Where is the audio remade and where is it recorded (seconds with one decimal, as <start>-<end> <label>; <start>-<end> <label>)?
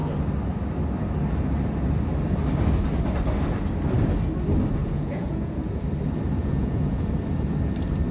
0.0-4.8 recorded; 4.8-5.8 remade; 5.8-6.4 recorded; 6.4-7.1 remade; 7.1-8.1 recorded